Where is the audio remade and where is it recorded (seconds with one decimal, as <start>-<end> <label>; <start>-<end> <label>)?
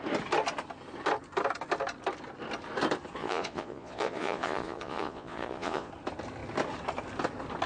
0.0-3.2 recorded; 3.2-5.9 remade; 5.9-7.7 recorded